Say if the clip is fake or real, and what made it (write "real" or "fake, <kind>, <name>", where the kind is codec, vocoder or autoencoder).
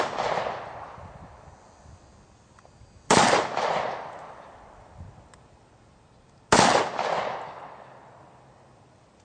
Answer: real